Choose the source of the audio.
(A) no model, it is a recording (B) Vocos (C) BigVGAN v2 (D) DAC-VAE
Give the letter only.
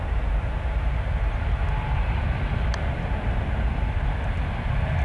A